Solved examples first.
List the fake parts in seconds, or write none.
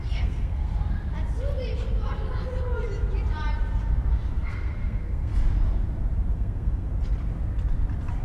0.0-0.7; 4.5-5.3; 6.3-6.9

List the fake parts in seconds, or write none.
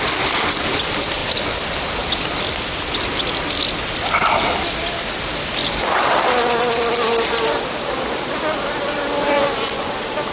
9.2-9.9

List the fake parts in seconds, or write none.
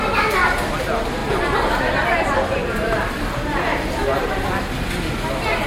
none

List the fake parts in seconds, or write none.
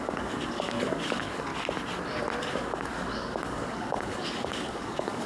0.0-1.5; 2.4-5.3